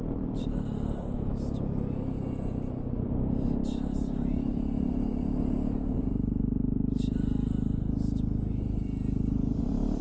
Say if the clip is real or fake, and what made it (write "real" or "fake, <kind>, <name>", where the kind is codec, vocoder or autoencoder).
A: real